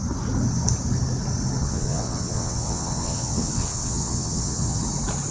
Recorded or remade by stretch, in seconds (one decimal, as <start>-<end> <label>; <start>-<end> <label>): 0.0-1.6 recorded; 1.6-4.8 remade; 4.8-5.3 recorded

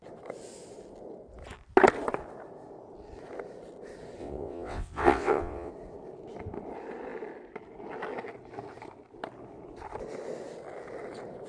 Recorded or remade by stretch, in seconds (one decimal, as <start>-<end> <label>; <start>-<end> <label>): 0.0-4.2 recorded; 4.2-5.7 remade; 5.7-11.5 recorded

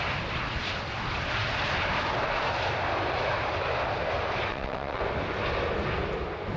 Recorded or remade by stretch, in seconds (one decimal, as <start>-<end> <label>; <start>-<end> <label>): 0.0-4.5 recorded; 4.5-5.0 remade; 5.0-6.6 recorded

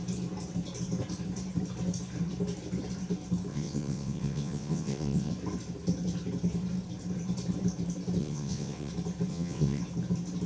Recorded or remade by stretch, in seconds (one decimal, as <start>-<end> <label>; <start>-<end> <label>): 0.0-3.5 recorded; 3.5-5.3 remade; 5.3-8.2 recorded; 8.2-8.9 remade; 8.9-9.3 recorded; 9.3-9.8 remade; 9.8-10.5 recorded

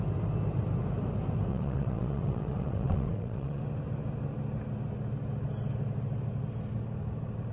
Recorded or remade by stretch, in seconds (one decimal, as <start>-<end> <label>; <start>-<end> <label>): 0.0-1.5 recorded; 1.5-3.6 remade; 3.6-7.5 recorded

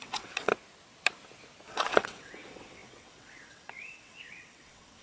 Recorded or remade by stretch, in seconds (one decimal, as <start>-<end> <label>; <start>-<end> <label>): 0.0-0.5 remade; 0.5-1.7 recorded; 1.7-5.0 remade

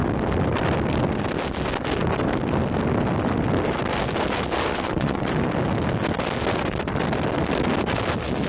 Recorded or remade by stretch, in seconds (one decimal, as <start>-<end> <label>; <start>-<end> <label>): 0.0-4.7 recorded; 4.7-5.3 remade; 5.3-8.5 recorded

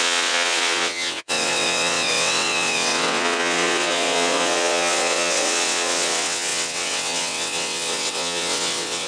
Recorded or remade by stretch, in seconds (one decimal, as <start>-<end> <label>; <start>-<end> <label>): 0.0-9.1 remade